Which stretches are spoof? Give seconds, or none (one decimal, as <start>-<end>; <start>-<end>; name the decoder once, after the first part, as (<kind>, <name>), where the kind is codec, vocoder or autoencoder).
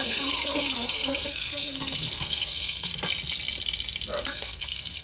0.0-2.9 (codec, SNAC); 4.2-5.0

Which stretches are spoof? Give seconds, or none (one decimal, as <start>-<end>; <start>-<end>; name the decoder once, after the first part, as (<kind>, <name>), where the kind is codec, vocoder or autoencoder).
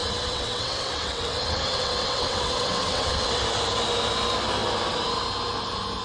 0.0-3.4 (vocoder, WaveNeXt)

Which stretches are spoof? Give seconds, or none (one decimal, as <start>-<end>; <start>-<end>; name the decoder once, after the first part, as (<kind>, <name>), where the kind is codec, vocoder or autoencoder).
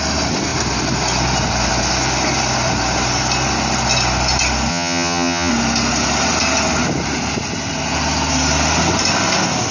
4.7-5.5 (vocoder, HiFi-GAN)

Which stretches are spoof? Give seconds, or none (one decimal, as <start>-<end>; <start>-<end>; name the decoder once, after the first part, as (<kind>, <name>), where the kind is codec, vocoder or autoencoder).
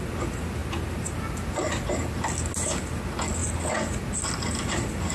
none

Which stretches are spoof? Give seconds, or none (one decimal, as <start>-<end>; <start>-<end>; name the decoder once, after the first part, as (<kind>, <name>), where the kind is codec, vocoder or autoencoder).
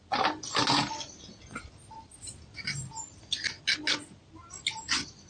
none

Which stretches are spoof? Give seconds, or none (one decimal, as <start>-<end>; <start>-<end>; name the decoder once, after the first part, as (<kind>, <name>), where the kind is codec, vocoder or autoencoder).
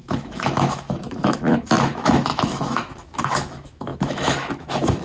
0.0-5.0 (autoencoder, DAC-VAE)